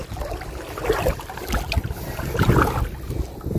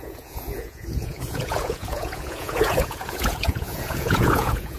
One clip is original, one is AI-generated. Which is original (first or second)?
first